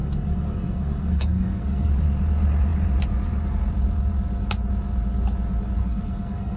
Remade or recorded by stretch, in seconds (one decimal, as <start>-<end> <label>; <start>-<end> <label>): 0.0-1.9 remade; 1.9-5.8 recorded; 5.8-6.6 remade